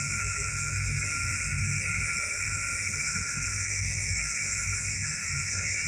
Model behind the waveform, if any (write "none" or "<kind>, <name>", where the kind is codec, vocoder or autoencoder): codec, SNAC